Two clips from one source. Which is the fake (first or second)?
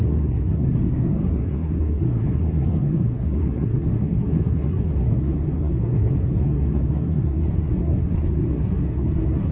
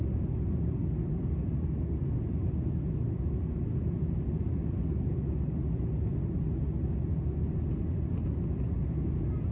first